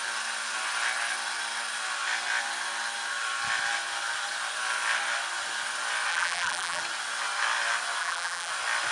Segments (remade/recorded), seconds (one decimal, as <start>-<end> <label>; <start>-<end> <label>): 0.0-6.1 recorded; 6.1-6.8 remade; 6.8-8.0 recorded; 8.0-8.5 remade; 8.5-8.9 recorded